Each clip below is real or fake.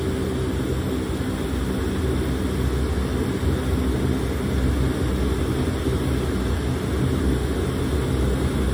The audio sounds real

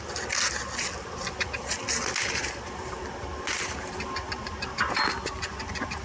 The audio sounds real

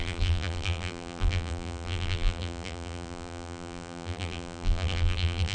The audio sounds fake